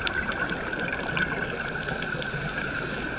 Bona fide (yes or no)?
yes